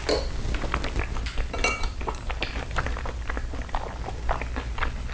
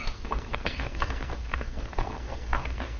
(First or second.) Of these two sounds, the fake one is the second